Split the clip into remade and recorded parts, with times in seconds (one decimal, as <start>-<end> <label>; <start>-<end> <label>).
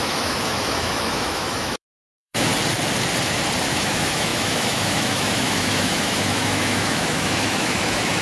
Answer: 0.0-2.5 remade; 2.5-3.7 recorded; 3.7-8.2 remade